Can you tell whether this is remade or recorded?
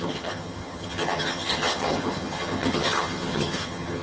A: remade